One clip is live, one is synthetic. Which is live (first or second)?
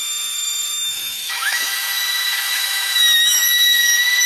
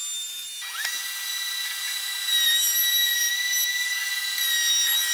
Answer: second